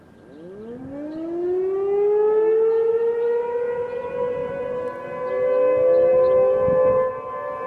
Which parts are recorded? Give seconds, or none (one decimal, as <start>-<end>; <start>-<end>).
0.0-7.7